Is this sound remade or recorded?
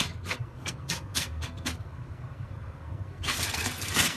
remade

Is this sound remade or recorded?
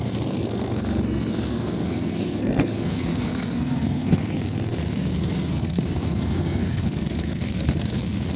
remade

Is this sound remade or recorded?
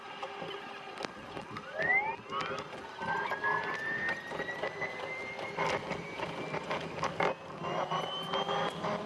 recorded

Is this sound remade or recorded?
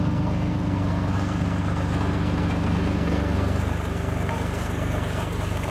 remade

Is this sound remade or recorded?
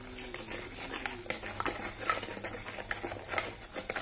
recorded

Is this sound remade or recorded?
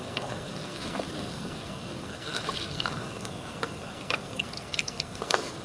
remade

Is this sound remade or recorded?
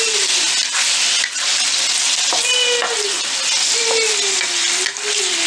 recorded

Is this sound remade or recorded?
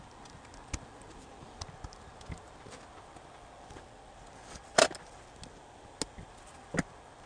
recorded